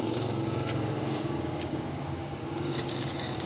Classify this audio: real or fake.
fake